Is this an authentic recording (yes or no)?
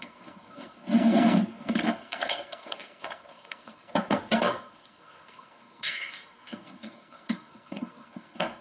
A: no